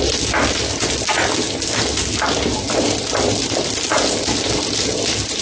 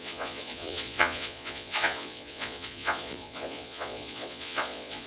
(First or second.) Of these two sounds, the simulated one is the second